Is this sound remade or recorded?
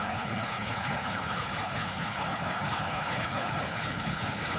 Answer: remade